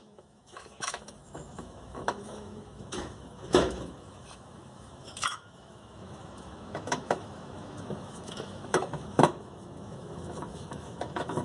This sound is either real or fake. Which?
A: fake